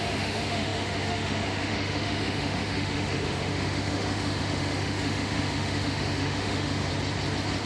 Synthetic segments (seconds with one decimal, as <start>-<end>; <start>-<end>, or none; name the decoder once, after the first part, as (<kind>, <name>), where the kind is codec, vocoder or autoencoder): 0.0-6.9 (autoencoder, DAC-VAE)